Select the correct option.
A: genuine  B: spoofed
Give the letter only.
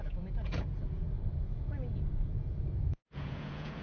B